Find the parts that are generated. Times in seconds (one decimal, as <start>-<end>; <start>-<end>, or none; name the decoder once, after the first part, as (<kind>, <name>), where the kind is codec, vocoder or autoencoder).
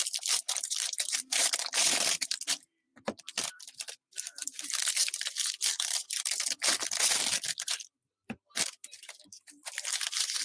0.0-10.4 (vocoder, BigVGAN v2)